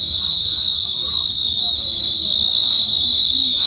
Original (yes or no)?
no